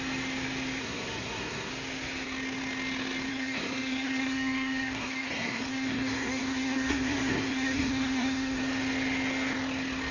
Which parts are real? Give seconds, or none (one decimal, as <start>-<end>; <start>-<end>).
0.0-0.8; 1.7-3.3; 8.6-10.1